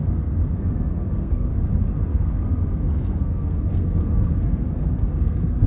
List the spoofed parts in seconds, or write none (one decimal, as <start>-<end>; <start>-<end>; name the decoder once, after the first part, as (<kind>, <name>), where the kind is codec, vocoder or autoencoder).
0.0-1.5 (codec, SNAC); 2.1-5.7